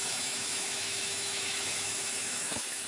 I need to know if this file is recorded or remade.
remade